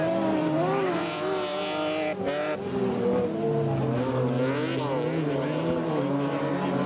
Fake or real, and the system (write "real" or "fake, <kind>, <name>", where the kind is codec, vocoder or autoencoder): real